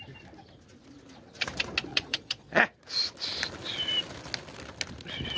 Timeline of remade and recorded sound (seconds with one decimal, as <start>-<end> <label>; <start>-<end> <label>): 0.0-1.9 recorded; 1.9-2.6 remade; 2.6-5.4 recorded